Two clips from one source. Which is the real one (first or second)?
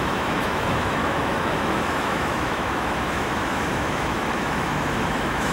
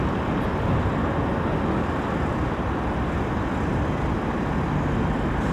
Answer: second